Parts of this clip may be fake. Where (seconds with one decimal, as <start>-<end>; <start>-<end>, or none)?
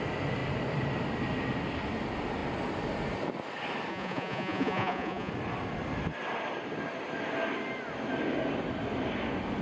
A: 3.9-5.3